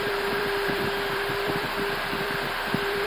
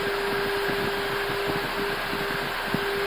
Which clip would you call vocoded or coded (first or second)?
first